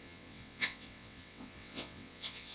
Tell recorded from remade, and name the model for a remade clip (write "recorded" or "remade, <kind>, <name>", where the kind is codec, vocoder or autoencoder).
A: remade, vocoder, WaveNeXt